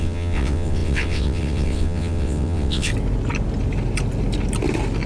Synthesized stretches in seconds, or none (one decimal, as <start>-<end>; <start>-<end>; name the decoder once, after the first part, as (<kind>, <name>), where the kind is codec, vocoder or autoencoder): 0.0-2.9 (vocoder, WaveNeXt)